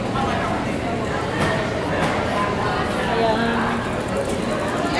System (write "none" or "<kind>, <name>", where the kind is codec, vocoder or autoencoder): none